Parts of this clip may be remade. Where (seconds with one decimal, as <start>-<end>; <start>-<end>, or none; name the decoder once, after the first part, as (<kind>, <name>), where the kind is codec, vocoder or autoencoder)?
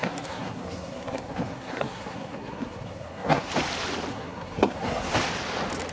0.0-3.5 (codec, SNAC); 4.1-5.1